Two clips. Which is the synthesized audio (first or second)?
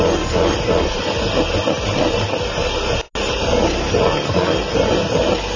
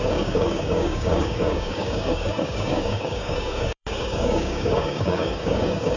second